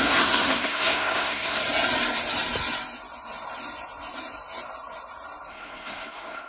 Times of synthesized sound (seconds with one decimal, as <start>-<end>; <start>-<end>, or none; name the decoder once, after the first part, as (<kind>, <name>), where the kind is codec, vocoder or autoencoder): 0.0-1.6 (codec, SNAC); 5.5-6.5